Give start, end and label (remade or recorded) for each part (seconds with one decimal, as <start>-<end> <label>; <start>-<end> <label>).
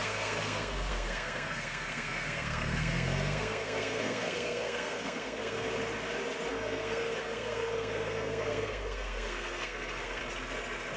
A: 0.0-5.7 remade; 5.7-6.5 recorded; 6.5-10.2 remade; 10.2-11.0 recorded